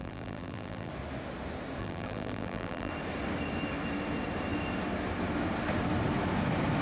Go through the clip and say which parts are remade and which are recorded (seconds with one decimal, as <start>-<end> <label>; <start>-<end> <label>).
0.0-0.9 remade; 0.9-1.8 recorded; 1.8-2.9 remade; 2.9-6.8 recorded